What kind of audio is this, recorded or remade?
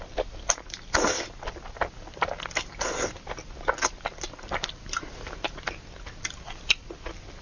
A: recorded